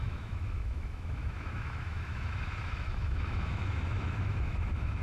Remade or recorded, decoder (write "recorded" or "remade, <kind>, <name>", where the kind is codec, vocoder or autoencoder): remade, autoencoder, DAC-VAE